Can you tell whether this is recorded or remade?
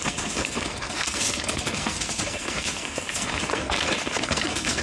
remade